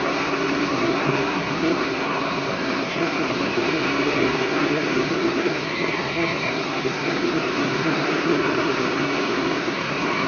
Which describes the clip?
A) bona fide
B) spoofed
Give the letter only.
B